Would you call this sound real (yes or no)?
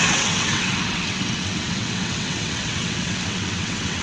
no